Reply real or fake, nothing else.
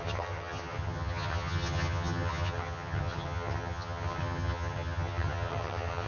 fake